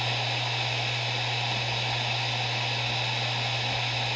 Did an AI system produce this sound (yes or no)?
no